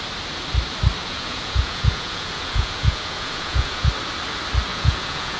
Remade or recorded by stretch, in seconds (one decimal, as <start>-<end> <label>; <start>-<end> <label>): 0.0-1.0 recorded; 1.0-3.9 remade; 3.9-4.7 recorded; 4.7-5.4 remade